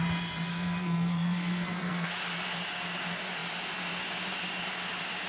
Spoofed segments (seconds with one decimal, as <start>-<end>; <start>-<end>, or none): 0.5-2.1